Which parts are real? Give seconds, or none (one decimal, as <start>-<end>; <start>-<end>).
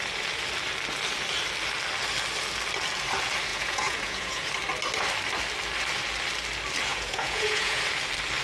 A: 0.0-3.5; 4.5-6.9; 7.8-8.4